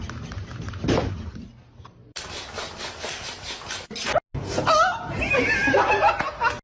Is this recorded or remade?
recorded